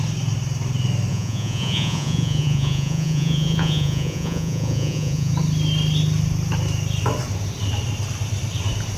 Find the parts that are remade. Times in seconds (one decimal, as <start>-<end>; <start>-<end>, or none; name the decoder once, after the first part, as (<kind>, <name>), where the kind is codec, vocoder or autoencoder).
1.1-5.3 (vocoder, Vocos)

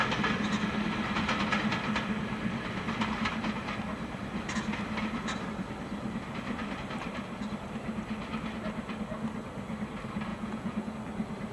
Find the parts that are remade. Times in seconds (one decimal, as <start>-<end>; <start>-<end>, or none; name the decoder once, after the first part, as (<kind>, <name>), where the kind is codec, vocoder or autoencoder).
10.3-10.9 (vocoder, Vocos)

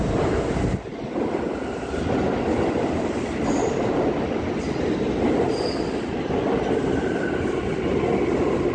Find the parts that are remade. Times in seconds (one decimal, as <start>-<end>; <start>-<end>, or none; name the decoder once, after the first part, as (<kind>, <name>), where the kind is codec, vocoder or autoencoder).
none

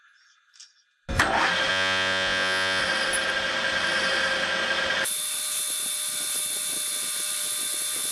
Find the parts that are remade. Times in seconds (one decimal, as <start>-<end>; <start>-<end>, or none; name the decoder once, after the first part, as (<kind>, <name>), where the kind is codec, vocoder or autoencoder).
1.7-2.8 (vocoder, Vocos)

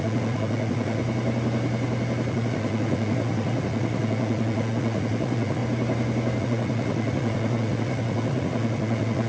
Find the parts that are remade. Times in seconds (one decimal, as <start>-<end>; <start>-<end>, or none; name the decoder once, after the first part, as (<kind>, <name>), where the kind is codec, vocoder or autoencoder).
0.0-1.0 (vocoder, Vocos); 2.3-5.6; 6.4-9.3

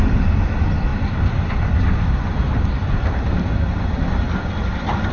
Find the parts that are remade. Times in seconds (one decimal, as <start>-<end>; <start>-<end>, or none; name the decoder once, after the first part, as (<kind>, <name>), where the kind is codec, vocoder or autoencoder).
none

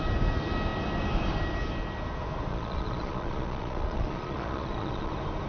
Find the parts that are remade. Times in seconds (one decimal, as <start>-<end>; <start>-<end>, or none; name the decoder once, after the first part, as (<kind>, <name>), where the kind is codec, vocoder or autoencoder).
2.5-5.1 (vocoder, Vocos)